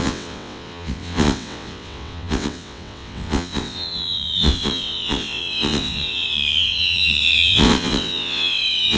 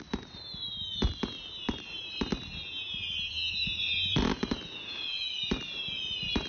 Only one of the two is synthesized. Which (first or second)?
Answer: first